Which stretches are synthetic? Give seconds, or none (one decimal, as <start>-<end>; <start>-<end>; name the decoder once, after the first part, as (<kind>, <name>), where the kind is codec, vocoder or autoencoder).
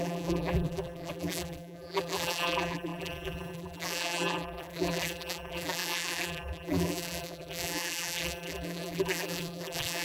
0.0-10.0 (vocoder, BigVGAN v2)